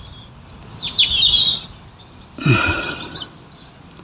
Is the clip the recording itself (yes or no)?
yes